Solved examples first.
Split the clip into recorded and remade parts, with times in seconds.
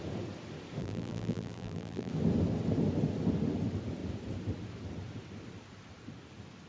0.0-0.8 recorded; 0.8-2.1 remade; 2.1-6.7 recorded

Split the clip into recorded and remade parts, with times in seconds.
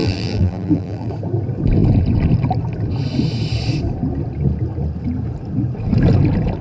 0.0-1.1 remade; 1.1-6.6 recorded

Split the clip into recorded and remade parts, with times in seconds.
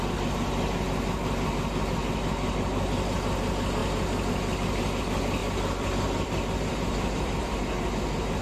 0.0-5.4 recorded; 5.4-7.5 remade; 7.5-8.4 recorded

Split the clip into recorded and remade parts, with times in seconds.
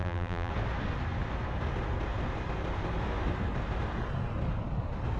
0.0-0.5 remade; 0.5-5.2 recorded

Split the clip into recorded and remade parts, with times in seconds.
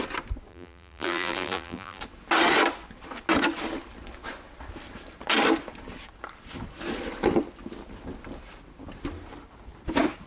0.0-0.5 recorded; 0.5-2.0 remade; 2.0-10.3 recorded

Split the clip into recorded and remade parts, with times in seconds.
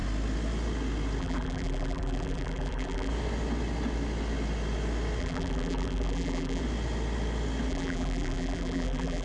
0.0-1.2 recorded; 1.2-3.1 remade; 3.1-5.2 recorded; 5.2-6.6 remade; 6.6-7.7 recorded; 7.7-9.2 remade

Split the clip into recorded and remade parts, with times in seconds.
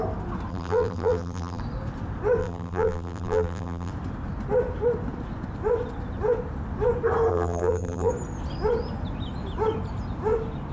0.0-0.5 recorded; 0.5-1.6 remade; 1.6-2.4 recorded; 2.4-3.9 remade; 3.9-7.3 recorded; 7.3-8.1 remade; 8.1-10.7 recorded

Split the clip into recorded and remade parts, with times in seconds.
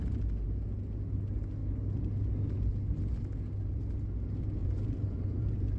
0.0-4.6 recorded; 4.6-5.8 remade